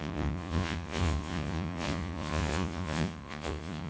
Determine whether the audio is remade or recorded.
remade